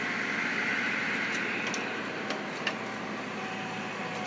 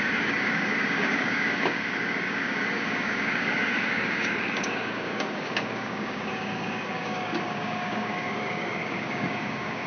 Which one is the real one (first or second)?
first